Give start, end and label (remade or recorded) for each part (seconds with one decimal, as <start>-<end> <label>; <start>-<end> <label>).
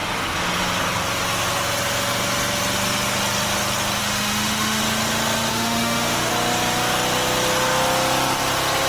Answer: 0.0-4.0 recorded; 4.0-4.8 remade; 4.8-5.5 recorded; 5.5-6.3 remade; 6.3-8.9 recorded